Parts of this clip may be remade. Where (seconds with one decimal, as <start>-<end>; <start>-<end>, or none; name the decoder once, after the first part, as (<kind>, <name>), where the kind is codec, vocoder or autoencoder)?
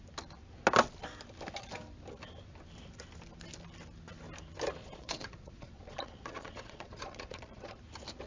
4.8-7.8 (vocoder, Vocos)